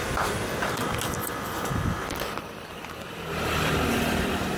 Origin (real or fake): real